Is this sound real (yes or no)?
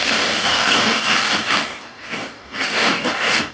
no